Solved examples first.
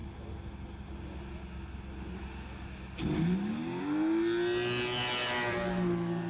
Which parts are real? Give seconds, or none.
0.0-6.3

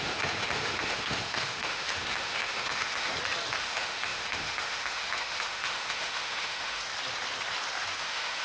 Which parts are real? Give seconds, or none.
3.1-3.6; 6.8-8.0

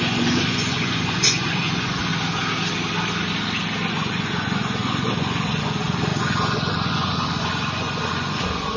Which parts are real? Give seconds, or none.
2.1-3.9

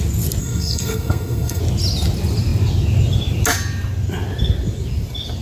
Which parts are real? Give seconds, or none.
0.0-0.4; 1.6-5.4

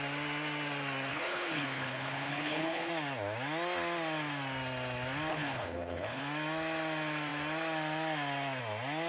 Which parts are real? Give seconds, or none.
0.0-1.1; 2.9-5.3; 6.2-9.1

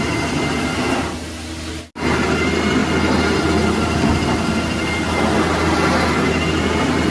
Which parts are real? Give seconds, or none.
0.0-7.1

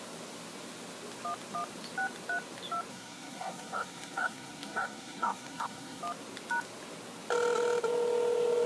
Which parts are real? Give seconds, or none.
0.0-2.9; 6.0-8.7

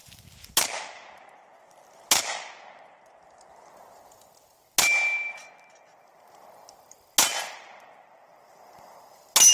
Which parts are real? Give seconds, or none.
0.0-9.5